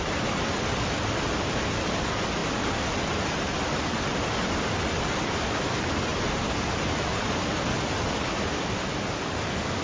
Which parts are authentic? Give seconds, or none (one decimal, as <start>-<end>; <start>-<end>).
0.0-9.8